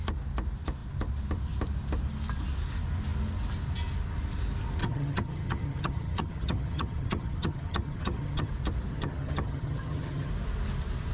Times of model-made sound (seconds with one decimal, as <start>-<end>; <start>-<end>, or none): 4.8-8.5; 8.9-10.3